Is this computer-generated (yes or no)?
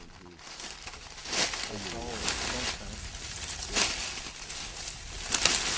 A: no